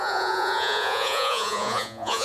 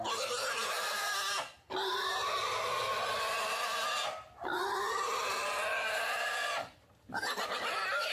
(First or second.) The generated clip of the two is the first